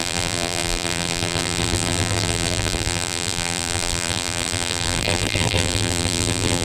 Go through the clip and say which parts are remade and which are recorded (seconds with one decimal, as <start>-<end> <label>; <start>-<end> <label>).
0.0-6.6 remade